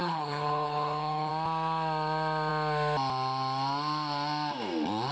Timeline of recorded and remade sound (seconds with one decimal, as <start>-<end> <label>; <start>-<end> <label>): 0.0-1.3 remade; 1.3-5.1 recorded